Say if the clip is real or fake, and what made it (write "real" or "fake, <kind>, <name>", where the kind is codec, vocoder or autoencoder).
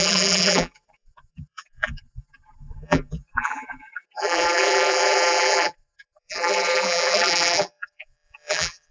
fake, vocoder, BigVGAN v2